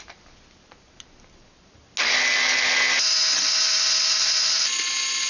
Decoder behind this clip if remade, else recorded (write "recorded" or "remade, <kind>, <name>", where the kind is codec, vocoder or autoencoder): recorded